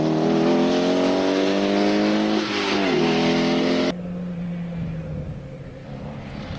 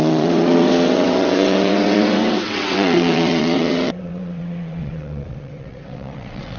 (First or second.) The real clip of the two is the first